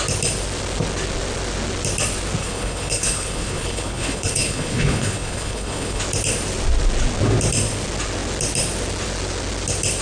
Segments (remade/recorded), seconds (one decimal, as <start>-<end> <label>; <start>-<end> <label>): 0.0-2.4 recorded; 2.4-6.0 remade; 6.0-10.0 recorded